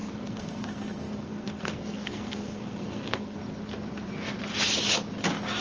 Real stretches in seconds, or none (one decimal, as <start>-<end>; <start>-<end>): 3.4-5.6